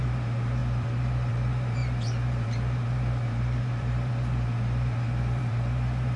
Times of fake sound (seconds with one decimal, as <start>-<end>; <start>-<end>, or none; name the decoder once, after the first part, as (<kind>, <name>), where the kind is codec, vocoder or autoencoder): 0.0-6.2 (vocoder, BigVGAN v2)